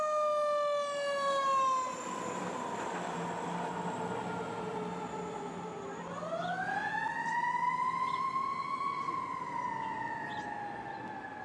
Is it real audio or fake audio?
real